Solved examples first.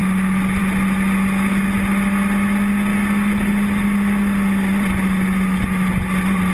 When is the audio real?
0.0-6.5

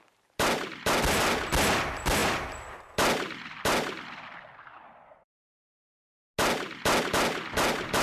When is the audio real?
0.0-8.0

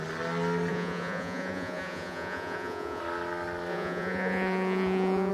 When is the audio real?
0.0-0.7; 3.0-3.7

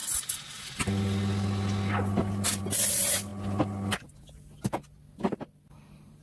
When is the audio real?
0.0-6.2

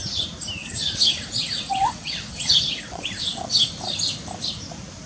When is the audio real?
0.0-0.6; 3.7-5.1